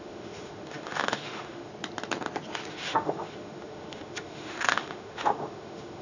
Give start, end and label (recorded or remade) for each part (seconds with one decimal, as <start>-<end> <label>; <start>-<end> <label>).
0.0-1.7 remade; 1.7-2.7 recorded; 2.7-6.0 remade